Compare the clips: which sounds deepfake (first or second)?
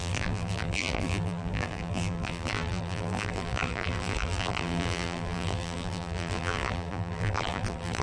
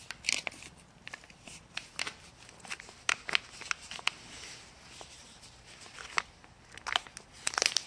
first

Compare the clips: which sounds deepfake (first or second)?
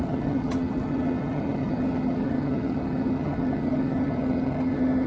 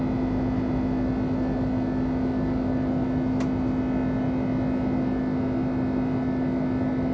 first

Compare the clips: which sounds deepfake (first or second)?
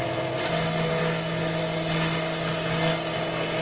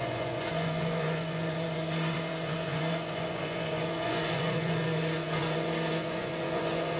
second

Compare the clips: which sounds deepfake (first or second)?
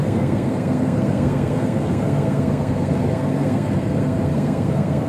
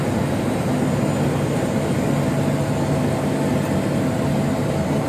first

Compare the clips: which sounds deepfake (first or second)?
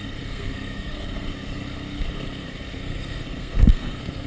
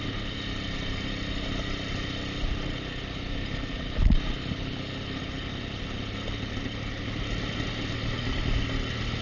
first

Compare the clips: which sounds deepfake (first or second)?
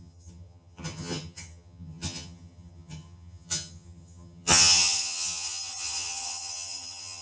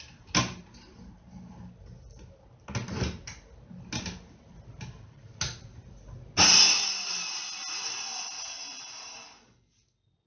first